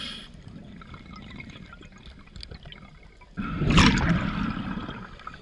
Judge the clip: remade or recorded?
recorded